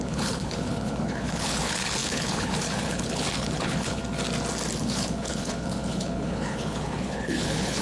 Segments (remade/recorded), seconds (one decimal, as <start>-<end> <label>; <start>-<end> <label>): 0.0-4.0 remade; 4.0-4.8 recorded; 4.8-7.8 remade